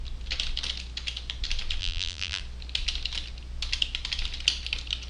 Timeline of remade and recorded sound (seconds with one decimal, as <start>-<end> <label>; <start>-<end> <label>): 0.0-1.8 recorded; 1.8-2.4 remade; 2.4-5.1 recorded